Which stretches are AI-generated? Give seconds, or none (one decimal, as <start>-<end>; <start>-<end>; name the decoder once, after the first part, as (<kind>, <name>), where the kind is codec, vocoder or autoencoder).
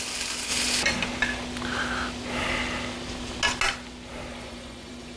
4.3-5.2 (vocoder, Vocos)